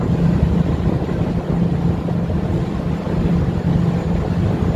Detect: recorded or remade recorded